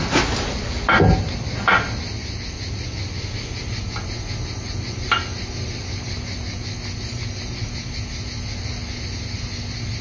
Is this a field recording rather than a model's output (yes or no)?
yes